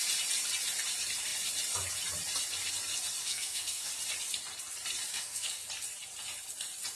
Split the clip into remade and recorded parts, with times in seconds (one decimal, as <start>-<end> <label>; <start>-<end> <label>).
0.0-3.2 recorded; 3.2-3.9 remade; 3.9-5.1 recorded; 5.1-5.6 remade; 5.6-7.0 recorded